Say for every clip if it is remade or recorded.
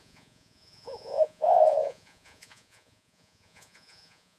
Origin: remade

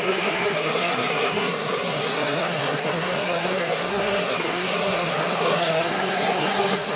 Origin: remade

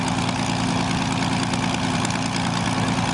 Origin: recorded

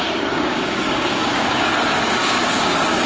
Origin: remade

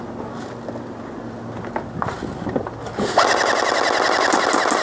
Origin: recorded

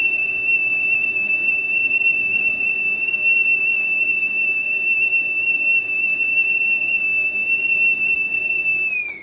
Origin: remade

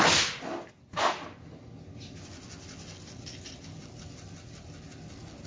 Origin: recorded